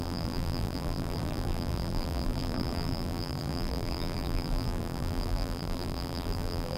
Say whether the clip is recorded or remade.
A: remade